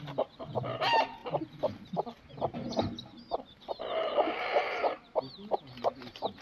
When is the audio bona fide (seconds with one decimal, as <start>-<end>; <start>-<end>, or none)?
0.0-6.4